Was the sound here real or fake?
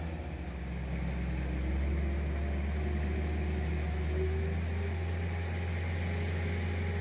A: real